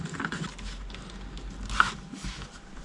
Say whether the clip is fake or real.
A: real